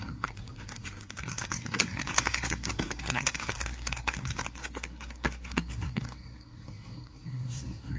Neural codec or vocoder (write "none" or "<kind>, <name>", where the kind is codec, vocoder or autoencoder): codec, SNAC